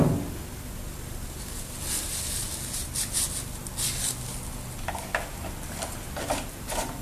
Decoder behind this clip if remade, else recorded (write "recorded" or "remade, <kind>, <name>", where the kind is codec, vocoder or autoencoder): recorded